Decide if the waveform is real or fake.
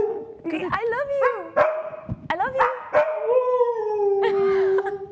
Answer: real